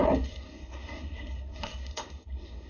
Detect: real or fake fake